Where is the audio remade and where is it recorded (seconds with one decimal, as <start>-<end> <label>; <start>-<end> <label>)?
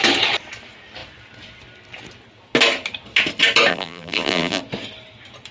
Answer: 0.0-3.7 recorded; 3.7-4.6 remade; 4.6-5.5 recorded